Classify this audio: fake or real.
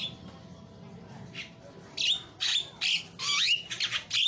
real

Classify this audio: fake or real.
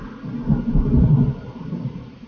real